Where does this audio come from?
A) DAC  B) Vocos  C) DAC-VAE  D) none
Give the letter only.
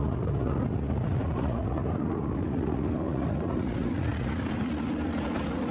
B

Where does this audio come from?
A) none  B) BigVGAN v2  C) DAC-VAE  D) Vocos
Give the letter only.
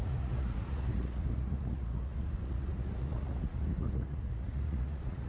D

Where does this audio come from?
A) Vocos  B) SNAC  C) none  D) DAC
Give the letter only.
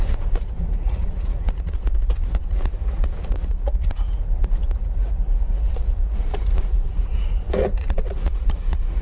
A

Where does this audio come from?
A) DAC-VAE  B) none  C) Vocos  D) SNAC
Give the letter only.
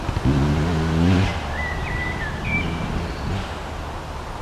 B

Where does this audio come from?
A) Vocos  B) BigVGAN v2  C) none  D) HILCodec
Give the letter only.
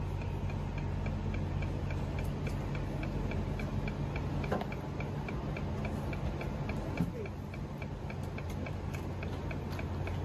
C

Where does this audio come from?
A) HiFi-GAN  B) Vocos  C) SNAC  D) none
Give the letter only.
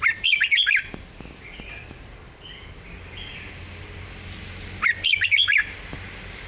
D